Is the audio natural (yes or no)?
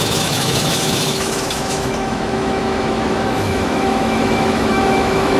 no